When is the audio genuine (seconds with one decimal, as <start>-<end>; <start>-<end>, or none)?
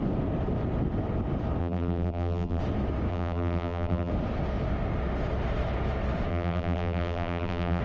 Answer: 0.0-1.6; 2.6-3.1; 4.1-6.3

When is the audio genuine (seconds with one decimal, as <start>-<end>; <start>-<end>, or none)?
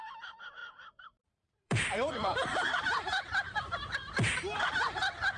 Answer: 0.0-0.6; 3.6-5.4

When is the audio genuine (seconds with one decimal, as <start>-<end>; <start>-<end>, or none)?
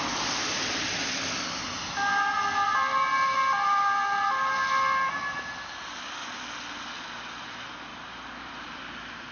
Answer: 0.0-7.9; 8.8-9.3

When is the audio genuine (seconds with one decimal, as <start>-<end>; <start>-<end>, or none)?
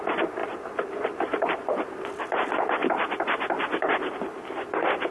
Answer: 0.0-0.4; 2.1-5.1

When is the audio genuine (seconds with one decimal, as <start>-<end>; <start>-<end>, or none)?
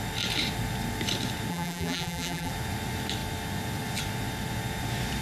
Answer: 0.0-1.5; 2.5-5.2